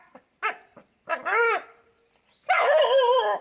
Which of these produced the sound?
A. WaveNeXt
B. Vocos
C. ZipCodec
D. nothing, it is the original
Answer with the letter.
D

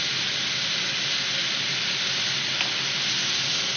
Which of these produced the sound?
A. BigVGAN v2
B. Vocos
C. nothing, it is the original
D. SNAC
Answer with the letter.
C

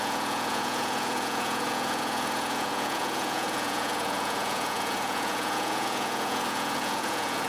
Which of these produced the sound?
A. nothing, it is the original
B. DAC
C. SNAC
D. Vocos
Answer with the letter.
D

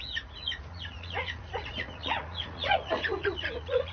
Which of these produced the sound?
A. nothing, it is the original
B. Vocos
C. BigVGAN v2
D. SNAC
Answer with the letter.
B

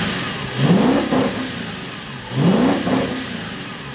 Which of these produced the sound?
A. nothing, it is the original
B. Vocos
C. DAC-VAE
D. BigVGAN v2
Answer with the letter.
A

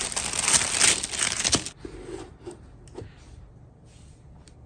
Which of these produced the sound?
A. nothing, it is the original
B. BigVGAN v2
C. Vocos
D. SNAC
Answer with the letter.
A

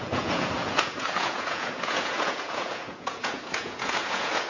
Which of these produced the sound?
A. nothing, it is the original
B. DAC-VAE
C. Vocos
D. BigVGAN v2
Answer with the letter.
C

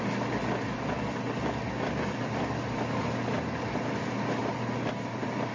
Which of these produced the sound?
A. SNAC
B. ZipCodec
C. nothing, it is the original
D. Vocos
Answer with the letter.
C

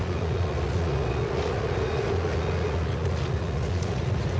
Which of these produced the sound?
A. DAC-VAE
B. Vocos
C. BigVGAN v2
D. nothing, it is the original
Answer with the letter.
B